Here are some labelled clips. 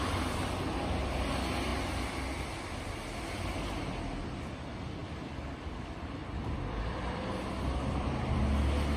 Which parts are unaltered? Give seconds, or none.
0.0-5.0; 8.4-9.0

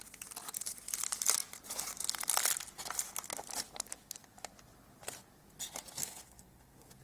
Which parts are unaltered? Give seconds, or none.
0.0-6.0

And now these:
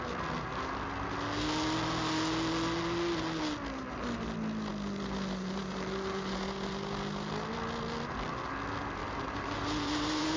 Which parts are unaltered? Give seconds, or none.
0.0-9.0

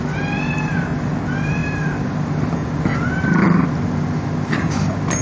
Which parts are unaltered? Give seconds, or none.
0.0-5.2

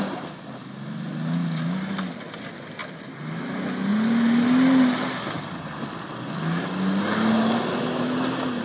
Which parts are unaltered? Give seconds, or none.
0.0-8.6

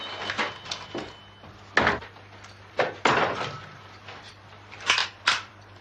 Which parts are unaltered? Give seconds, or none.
0.0-2.5

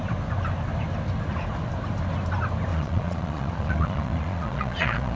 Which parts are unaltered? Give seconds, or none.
0.0-2.7

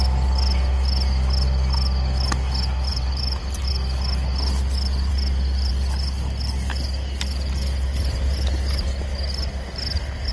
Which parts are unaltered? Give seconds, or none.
0.0-2.9; 3.7-10.3